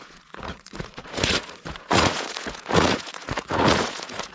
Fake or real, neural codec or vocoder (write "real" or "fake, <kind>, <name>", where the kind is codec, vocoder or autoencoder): fake, vocoder, Vocos